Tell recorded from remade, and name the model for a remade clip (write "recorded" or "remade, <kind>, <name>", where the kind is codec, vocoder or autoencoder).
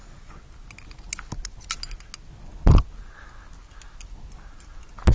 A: recorded